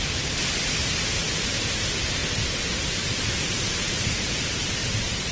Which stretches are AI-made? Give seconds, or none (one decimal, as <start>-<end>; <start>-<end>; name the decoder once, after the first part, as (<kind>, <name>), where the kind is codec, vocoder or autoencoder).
0.0-0.8 (vocoder, BigVGAN v2); 1.4-2.2; 3.4-4.8